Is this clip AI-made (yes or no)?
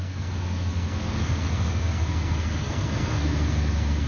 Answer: yes